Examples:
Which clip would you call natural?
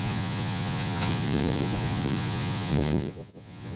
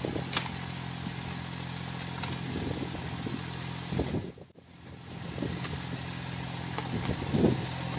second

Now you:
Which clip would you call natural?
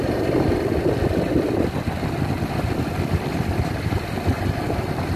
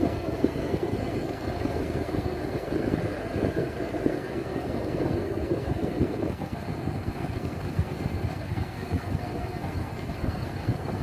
first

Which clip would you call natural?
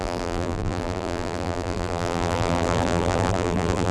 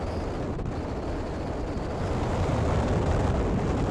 second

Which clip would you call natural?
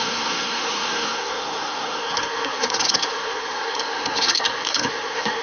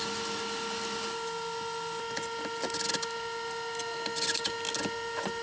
second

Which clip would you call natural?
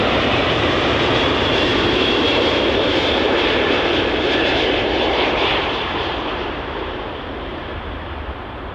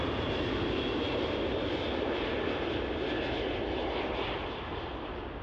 second